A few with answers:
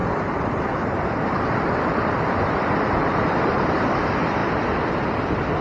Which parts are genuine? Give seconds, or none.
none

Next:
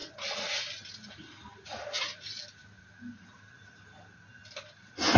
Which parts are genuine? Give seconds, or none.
0.0-5.2